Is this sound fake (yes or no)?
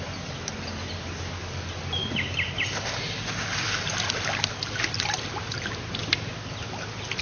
no